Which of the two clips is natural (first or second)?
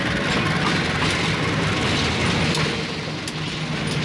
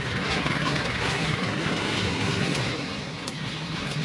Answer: first